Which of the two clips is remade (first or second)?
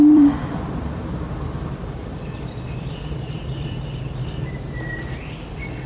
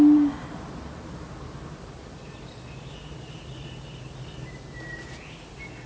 first